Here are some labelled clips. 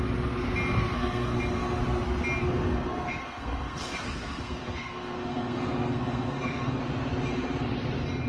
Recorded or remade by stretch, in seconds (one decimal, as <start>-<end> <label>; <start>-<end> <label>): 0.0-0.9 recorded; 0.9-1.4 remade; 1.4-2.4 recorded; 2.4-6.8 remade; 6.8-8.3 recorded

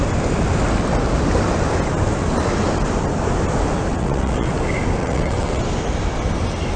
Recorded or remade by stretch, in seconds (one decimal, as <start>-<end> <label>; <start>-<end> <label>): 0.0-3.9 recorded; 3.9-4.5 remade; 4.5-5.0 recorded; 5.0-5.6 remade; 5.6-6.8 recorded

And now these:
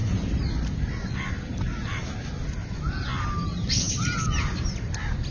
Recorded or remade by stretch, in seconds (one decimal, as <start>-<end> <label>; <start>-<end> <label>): 0.0-5.3 recorded

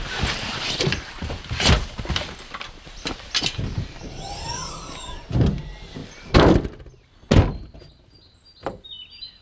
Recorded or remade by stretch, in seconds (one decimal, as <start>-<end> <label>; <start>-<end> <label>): 0.0-9.4 recorded